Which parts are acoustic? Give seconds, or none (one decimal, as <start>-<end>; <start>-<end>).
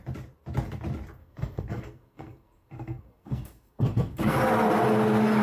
0.0-1.2; 4.4-5.4